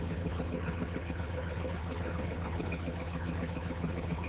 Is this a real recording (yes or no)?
no